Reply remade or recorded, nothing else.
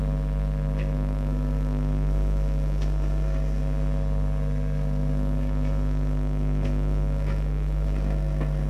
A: remade